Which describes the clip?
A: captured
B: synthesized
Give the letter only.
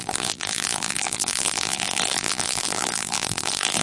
B